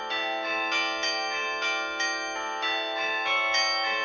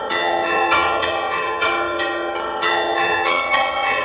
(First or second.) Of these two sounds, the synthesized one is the second